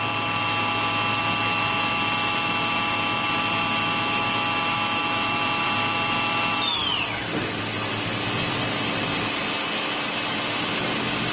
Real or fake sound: real